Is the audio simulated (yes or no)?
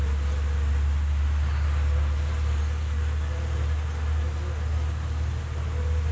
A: no